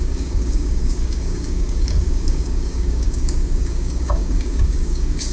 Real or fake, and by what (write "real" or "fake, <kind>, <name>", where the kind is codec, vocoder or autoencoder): fake, codec, DAC